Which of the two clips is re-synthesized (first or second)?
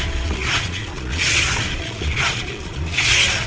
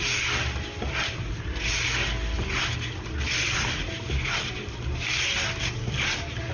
first